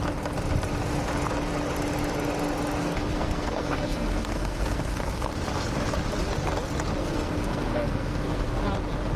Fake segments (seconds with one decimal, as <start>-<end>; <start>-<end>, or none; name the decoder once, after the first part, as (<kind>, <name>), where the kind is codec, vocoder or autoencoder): 2.8-5.3 (codec, SNAC); 7.0-8.6